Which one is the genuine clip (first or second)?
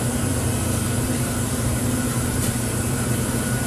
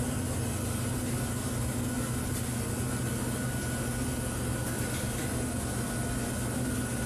second